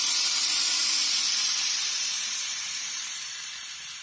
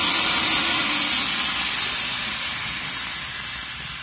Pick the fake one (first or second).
first